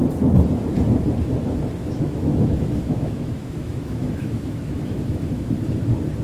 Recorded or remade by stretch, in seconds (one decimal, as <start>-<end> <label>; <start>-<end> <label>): 0.0-1.8 recorded; 1.8-5.5 remade; 5.5-6.2 recorded